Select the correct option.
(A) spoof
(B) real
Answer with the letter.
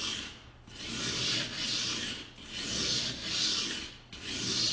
B